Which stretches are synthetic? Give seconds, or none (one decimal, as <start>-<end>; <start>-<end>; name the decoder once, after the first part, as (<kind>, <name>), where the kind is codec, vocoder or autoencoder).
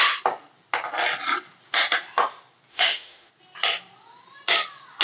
2.7-3.3 (autoencoder, DAC-VAE)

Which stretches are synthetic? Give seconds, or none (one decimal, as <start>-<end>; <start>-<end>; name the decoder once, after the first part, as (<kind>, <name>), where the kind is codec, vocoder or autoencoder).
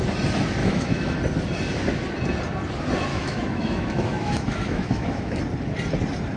0.6-1.2 (autoencoder, DAC-VAE); 3.1-5.4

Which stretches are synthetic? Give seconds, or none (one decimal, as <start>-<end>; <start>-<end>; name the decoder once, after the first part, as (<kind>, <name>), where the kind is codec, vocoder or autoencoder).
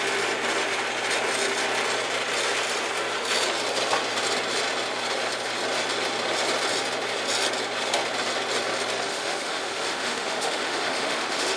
9.1-11.6 (autoencoder, DAC-VAE)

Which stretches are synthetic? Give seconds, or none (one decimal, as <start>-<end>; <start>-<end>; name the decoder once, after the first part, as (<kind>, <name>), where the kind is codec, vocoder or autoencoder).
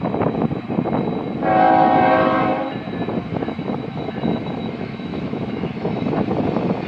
3.3-6.1 (autoencoder, DAC-VAE)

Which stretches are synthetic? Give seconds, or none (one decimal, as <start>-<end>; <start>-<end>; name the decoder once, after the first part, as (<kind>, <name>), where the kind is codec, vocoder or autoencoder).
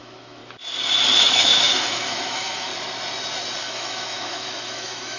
0.0-0.4 (autoencoder, DAC-VAE); 1.2-2.7; 3.6-5.2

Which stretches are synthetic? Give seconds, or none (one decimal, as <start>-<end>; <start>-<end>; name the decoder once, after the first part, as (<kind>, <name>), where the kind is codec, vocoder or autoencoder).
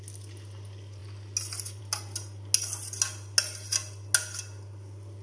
none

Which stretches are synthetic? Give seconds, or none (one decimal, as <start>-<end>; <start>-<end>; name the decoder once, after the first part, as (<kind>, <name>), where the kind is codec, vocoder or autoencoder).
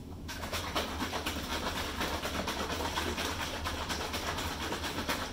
0.0-0.6 (autoencoder, DAC-VAE)